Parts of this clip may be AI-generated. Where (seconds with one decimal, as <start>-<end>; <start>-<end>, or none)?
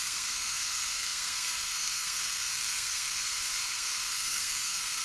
0.0-5.0